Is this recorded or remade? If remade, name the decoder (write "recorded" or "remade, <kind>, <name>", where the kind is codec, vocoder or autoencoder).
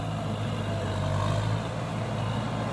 recorded